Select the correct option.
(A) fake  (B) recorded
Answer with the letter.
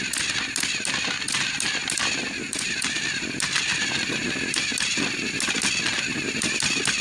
B